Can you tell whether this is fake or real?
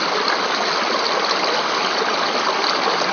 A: real